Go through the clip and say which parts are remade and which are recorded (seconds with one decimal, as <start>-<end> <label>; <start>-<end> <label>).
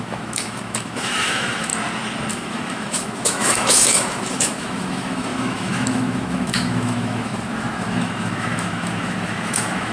0.0-1.7 remade; 1.7-2.3 recorded; 2.3-9.9 remade